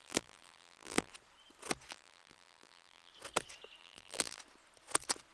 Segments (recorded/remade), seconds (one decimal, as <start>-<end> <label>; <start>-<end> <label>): 0.0-1.1 remade; 1.1-1.9 recorded; 1.9-3.1 remade; 3.1-3.8 recorded; 3.8-4.4 remade; 4.4-5.3 recorded